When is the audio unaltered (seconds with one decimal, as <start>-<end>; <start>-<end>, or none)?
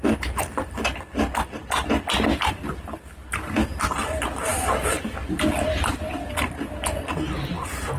0.0-8.0